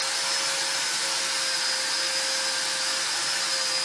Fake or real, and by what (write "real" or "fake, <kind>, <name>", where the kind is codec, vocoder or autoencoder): real